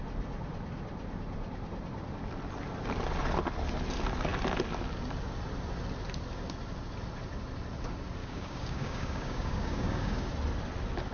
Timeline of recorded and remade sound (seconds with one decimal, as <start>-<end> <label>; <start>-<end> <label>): 0.0-8.2 recorded; 8.2-10.3 remade; 10.3-11.1 recorded